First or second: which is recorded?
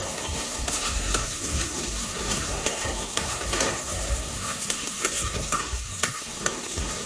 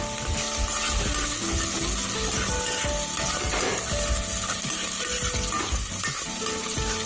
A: second